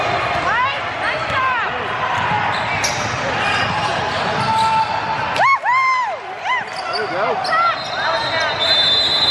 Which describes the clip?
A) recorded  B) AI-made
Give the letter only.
A